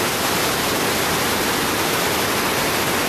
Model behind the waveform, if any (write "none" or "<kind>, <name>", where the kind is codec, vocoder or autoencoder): none